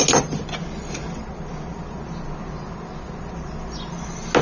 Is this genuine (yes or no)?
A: yes